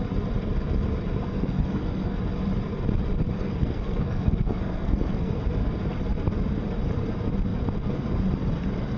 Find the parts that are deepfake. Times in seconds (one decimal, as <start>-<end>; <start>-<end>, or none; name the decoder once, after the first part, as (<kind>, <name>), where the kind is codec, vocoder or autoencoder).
1.3-2.2 (codec, SNAC); 3.4-5.4